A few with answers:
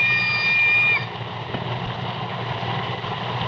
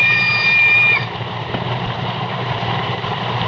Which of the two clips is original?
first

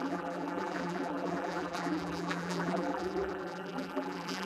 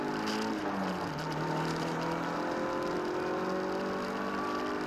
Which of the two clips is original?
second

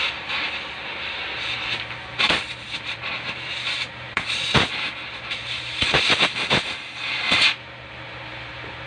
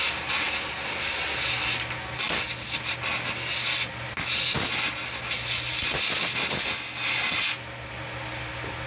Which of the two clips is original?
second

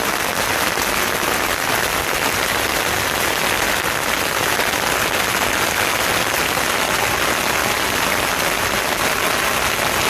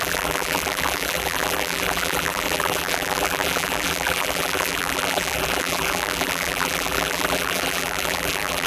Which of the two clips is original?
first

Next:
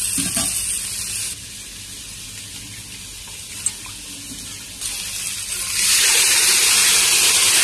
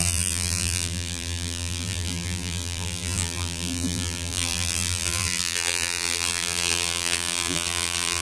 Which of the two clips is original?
first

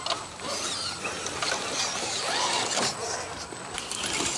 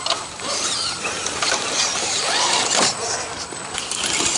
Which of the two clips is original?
first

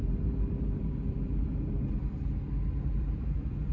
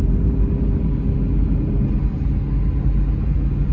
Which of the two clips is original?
second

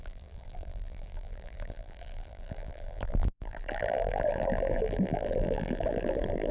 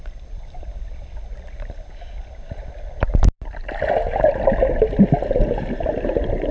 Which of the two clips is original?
second